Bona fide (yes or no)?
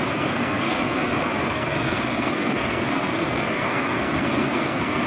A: no